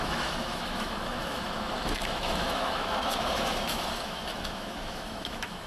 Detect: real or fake fake